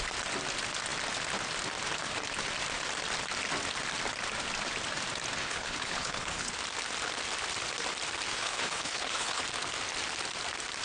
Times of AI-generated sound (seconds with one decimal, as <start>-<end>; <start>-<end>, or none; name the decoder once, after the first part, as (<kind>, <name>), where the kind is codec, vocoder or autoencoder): 5.4-6.5 (codec, HILCodec); 8.3-9.4